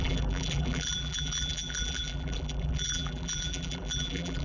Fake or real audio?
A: fake